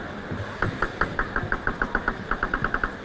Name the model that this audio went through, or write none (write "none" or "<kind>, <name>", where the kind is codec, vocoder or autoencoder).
none